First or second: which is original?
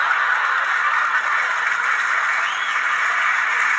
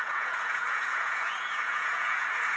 first